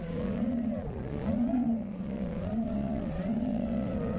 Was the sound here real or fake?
fake